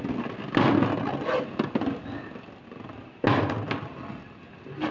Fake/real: real